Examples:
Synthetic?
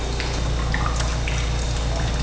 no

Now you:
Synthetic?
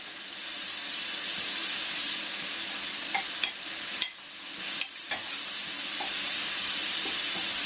no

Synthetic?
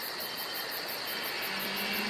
no